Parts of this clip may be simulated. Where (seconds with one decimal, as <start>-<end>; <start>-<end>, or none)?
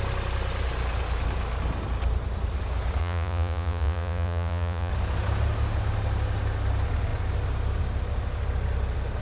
3.0-4.9